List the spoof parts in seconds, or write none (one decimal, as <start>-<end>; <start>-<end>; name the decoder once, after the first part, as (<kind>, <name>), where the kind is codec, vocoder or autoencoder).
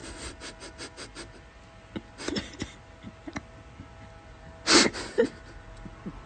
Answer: none